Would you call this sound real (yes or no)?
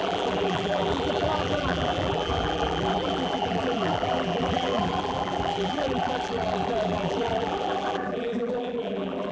no